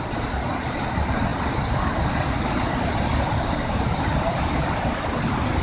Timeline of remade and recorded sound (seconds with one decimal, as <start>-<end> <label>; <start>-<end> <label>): 0.0-5.6 recorded